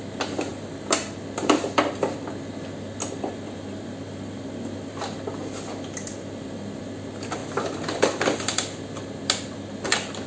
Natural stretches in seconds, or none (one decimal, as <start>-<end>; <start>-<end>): 0.0-0.5; 1.9-7.4; 9.0-10.3